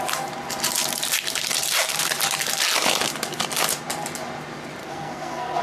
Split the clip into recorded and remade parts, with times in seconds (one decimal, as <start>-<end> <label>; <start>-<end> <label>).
0.0-4.8 recorded; 4.8-5.6 remade